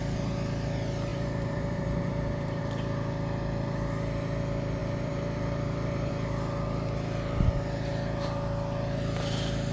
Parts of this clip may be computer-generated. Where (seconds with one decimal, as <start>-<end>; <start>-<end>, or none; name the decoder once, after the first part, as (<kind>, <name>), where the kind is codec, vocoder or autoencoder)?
1.1-2.6 (vocoder, BigVGAN v2); 4.8-6.1

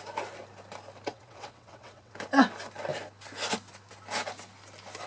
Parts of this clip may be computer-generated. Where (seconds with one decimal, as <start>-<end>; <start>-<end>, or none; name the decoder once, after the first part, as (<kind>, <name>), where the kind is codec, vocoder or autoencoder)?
1.1-2.1 (vocoder, WaveNeXt)